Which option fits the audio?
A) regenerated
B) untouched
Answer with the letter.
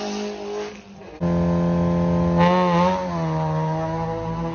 B